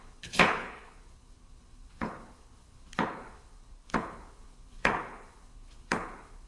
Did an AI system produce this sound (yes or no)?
yes